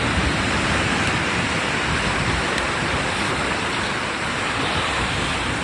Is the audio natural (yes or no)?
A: yes